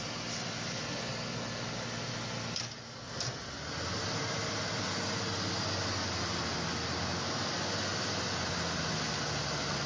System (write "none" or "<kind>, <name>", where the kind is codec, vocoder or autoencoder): none